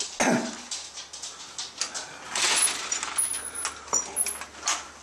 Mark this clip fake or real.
real